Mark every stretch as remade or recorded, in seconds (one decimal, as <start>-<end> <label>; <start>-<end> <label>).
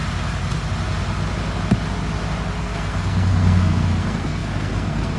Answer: 0.0-2.6 recorded; 2.6-5.2 remade